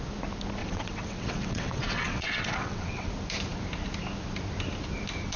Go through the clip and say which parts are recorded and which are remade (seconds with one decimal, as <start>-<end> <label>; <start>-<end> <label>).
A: 0.0-0.6 recorded; 0.6-3.1 remade; 3.1-5.4 recorded